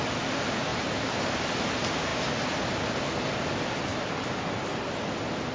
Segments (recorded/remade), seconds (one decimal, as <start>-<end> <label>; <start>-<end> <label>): 0.0-0.7 recorded; 0.7-1.5 remade; 1.5-5.5 recorded